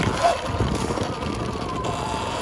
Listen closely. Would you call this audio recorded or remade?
recorded